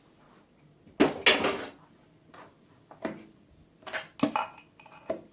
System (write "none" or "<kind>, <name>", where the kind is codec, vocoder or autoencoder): none